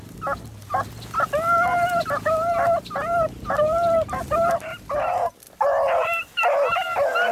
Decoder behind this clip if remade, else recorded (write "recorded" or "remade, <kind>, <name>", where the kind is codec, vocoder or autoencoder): recorded